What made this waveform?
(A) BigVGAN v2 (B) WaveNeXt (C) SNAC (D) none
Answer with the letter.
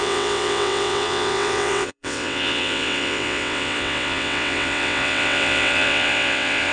B